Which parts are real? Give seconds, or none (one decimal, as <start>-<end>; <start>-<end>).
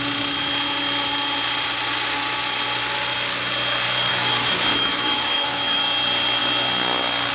0.0-4.1; 5.8-7.3